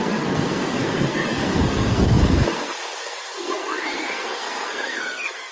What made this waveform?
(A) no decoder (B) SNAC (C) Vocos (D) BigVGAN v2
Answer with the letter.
B